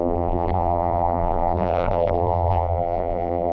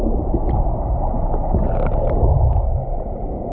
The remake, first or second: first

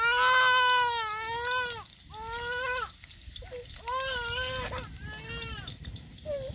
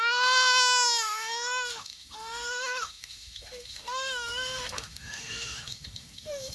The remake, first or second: second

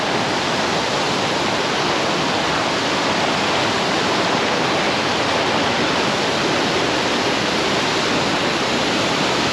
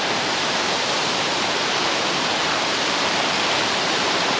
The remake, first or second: second